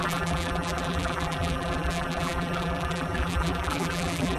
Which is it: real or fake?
fake